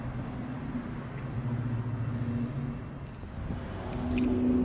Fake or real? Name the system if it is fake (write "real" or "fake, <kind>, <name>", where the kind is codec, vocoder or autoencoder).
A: real